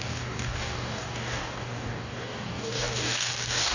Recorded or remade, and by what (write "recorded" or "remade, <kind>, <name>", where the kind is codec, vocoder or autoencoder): remade, codec, DAC